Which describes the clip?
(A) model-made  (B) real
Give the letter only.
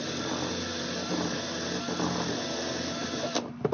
B